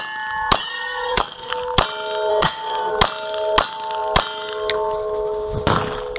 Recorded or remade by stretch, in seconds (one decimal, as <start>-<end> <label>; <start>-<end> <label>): 0.0-0.6 recorded; 0.6-1.5 remade; 1.5-2.3 recorded; 2.3-2.9 remade; 2.9-6.2 recorded